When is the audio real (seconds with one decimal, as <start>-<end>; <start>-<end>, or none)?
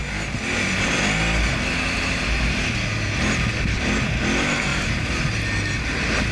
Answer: 0.0-4.7; 5.3-6.3